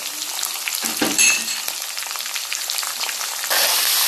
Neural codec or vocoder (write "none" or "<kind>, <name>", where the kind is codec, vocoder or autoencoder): vocoder, BigVGAN v2